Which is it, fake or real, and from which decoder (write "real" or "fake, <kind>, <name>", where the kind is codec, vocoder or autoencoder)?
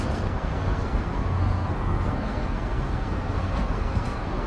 fake, codec, SNAC